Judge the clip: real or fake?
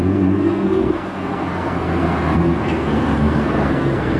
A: fake